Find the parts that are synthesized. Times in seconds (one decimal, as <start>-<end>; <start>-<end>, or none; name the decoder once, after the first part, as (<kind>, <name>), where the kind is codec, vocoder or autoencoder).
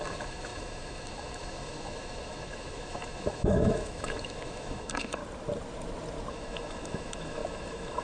0.0-5.2 (autoencoder, DAC-VAE); 6.3-8.0